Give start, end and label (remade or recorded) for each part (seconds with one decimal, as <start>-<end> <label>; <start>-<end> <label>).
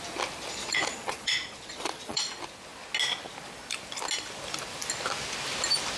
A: 0.0-0.6 recorded; 0.6-2.2 remade; 2.2-6.0 recorded